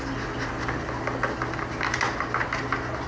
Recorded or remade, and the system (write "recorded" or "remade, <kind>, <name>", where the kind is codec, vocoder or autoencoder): recorded